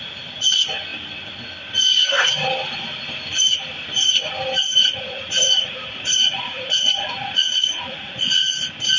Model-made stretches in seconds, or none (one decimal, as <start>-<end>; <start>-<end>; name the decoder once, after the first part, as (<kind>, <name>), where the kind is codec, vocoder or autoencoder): 4.7-8.3 (vocoder, Vocos)